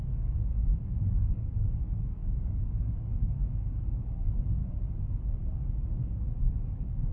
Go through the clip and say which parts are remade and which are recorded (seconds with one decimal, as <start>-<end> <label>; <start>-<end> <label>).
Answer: 0.0-0.6 remade; 0.6-1.3 recorded; 1.3-4.6 remade; 4.6-6.4 recorded; 6.4-7.1 remade

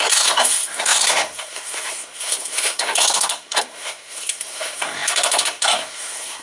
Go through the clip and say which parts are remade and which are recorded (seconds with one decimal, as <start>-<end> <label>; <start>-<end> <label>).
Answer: 0.0-6.4 remade

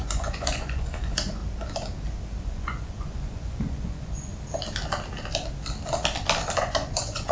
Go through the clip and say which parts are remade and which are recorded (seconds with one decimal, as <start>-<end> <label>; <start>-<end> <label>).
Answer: 0.0-1.4 remade; 1.4-2.4 recorded; 2.4-4.3 remade; 4.3-6.6 recorded; 6.6-7.3 remade

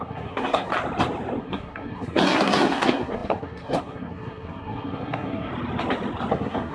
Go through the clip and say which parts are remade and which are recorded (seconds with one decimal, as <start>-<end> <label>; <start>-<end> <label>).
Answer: 0.0-0.7 remade; 0.7-1.4 recorded; 1.4-5.5 remade; 5.5-6.3 recorded; 6.3-6.7 remade

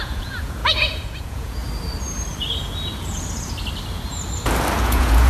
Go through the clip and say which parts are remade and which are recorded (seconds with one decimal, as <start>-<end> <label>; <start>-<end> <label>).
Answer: 0.0-1.6 remade; 1.6-4.8 recorded; 4.8-5.3 remade

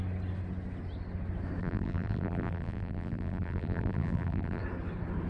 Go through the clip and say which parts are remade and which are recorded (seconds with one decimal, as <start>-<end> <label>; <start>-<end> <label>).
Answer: 0.0-1.6 recorded; 1.6-4.6 remade; 4.6-5.3 recorded